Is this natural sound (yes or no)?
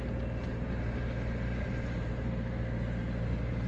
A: yes